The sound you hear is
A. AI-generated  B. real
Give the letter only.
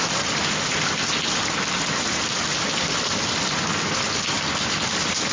B